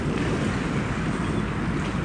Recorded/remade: recorded